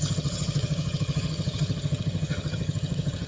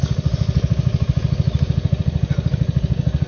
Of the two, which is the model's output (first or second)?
first